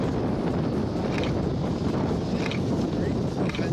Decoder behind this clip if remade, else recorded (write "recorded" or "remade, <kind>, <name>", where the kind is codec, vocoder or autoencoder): recorded